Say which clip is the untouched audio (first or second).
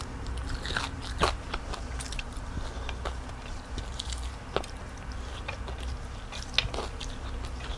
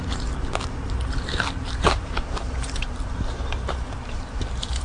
first